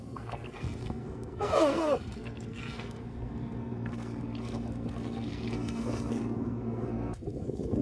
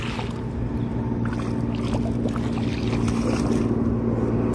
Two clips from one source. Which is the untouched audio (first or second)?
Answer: second